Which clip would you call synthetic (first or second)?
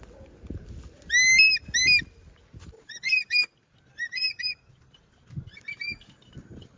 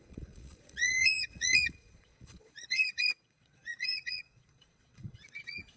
second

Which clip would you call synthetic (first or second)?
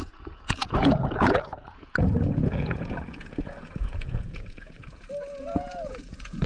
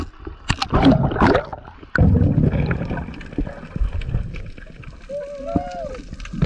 first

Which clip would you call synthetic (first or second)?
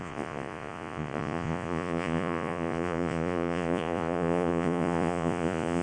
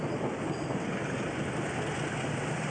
first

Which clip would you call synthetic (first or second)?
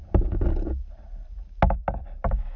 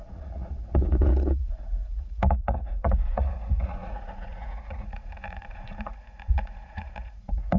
second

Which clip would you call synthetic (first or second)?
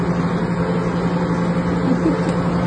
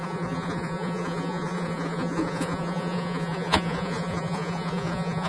second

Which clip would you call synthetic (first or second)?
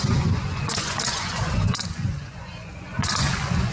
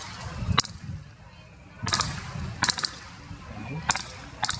first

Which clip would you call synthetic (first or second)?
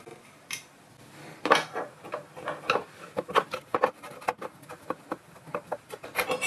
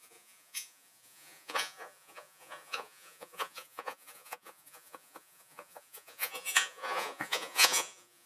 second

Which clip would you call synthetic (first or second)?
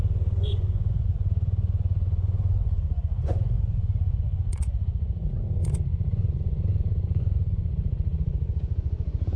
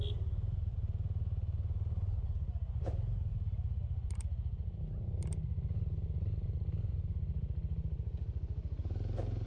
first